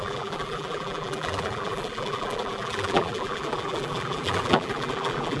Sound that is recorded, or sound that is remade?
remade